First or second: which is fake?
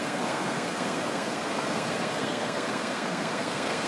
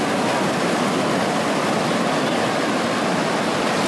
first